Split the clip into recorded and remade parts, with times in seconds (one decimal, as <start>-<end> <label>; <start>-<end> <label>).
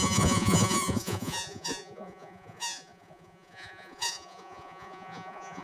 0.0-5.6 remade